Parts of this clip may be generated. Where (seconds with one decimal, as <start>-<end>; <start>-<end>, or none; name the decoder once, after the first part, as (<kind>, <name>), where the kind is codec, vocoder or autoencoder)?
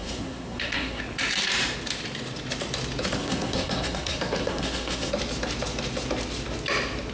0.0-1.0 (codec, SNAC); 3.2-5.1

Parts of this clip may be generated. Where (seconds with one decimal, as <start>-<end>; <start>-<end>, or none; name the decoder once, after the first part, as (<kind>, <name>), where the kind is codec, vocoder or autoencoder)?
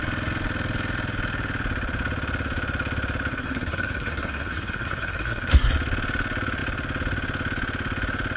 3.3-5.7 (codec, SNAC)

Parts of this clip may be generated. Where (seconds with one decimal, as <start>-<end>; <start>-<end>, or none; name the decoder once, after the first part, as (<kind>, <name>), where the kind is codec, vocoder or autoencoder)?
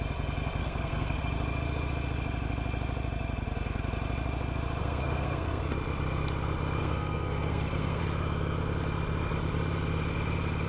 0.6-1.2 (codec, SNAC); 4.8-5.6; 6.8-8.0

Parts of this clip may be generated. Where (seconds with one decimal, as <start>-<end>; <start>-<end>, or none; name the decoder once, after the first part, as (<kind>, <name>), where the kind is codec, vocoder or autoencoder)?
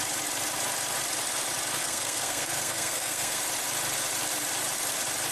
1.8-3.4 (codec, SNAC)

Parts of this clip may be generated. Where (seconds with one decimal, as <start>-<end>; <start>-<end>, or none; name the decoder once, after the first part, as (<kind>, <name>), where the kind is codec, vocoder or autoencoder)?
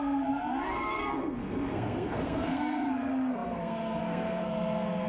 0.0-5.1 (codec, SNAC)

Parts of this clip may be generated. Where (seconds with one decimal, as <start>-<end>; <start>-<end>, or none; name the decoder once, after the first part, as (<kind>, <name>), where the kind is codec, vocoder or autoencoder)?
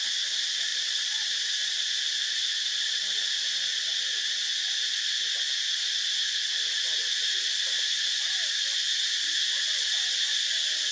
none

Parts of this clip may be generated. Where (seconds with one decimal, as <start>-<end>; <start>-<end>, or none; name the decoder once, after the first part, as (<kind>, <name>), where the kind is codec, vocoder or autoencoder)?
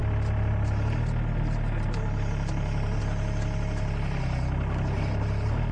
none